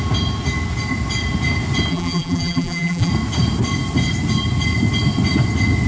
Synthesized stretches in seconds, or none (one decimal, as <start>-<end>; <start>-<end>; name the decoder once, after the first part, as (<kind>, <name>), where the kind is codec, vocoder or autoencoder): 1.9-3.1 (vocoder, BigVGAN v2)